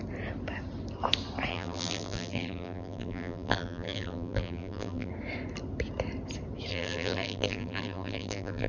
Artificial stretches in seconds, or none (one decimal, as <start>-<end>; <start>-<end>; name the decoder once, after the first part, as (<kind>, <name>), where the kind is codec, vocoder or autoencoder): 1.5-5.1 (vocoder, BigVGAN v2); 6.7-8.7